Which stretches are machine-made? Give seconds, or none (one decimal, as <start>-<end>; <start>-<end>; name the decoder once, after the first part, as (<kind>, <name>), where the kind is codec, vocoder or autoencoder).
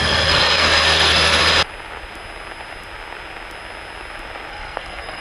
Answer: 0.0-1.4 (codec, SNAC); 4.5-5.2